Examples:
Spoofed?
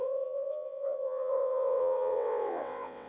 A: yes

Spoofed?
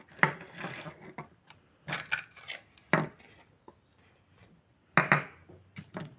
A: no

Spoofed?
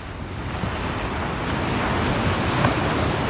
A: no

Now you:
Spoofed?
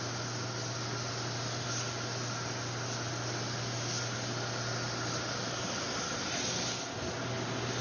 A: no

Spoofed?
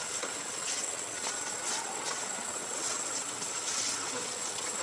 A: yes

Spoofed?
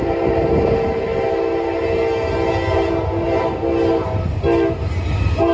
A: no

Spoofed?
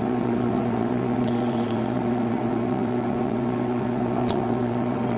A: yes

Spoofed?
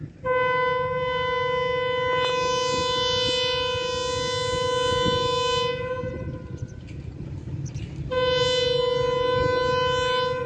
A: no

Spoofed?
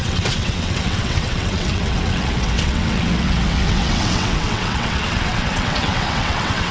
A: yes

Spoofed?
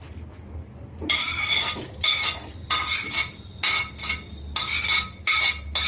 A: no